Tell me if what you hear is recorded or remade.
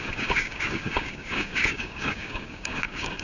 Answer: remade